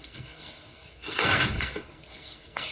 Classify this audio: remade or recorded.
remade